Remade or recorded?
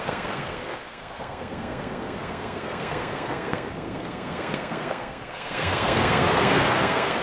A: remade